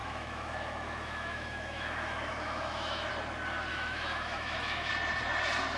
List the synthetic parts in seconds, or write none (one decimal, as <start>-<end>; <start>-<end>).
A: 0.0-3.1; 3.7-4.9